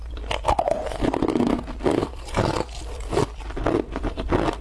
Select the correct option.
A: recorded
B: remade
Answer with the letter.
A